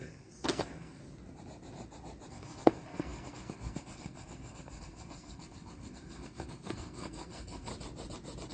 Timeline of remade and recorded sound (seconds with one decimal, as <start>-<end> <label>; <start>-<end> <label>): 0.0-1.0 remade; 1.0-2.3 recorded; 2.3-7.7 remade; 7.7-8.5 recorded